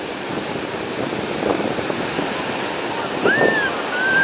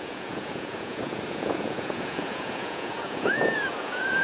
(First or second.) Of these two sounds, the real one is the first